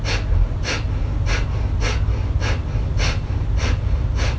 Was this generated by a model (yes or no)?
no